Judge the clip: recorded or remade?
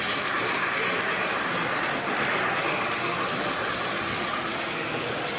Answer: recorded